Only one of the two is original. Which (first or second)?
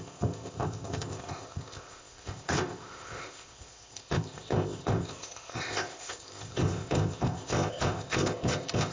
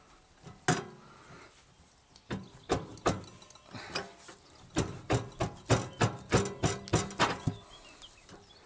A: second